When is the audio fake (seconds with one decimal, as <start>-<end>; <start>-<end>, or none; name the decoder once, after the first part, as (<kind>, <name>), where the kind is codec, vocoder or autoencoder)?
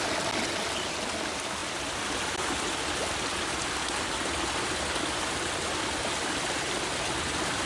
none